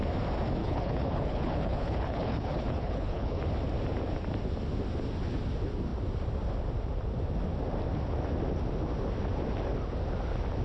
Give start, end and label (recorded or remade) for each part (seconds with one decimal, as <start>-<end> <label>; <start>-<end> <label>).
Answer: 0.0-0.6 recorded; 0.6-3.4 remade; 3.4-10.6 recorded